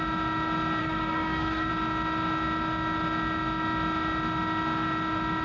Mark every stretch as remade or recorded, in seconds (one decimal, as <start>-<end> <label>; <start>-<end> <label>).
0.0-0.8 recorded; 0.8-1.7 remade; 1.7-5.4 recorded